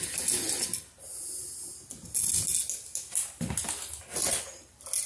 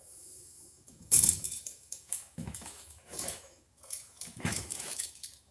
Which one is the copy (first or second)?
second